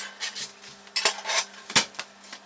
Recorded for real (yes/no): yes